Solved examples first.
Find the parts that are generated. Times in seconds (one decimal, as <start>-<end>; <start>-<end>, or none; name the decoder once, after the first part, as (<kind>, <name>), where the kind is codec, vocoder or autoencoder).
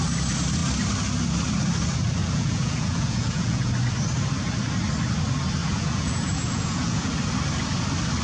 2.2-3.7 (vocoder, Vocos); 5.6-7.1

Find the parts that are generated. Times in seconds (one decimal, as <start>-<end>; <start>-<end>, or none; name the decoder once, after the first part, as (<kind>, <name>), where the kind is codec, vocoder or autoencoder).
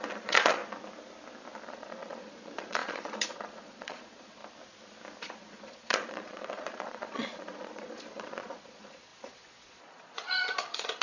0.0-0.6 (vocoder, Vocos); 1.7-4.4; 5.2-11.0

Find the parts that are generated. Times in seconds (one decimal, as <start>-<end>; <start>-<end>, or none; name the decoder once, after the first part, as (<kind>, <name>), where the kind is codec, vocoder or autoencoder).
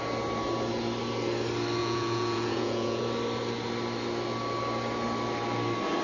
1.8-3.0 (vocoder, Vocos)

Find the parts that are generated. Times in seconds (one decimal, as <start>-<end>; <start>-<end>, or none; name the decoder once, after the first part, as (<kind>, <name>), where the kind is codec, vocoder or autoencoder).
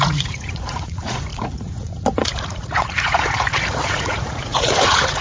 0.0-5.2 (vocoder, Vocos)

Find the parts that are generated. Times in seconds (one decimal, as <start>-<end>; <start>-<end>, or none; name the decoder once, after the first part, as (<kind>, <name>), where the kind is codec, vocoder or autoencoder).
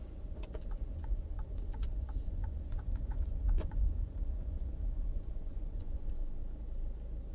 0.0-6.4 (vocoder, Vocos)